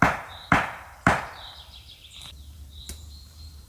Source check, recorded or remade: remade